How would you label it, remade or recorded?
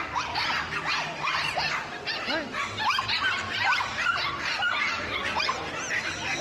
recorded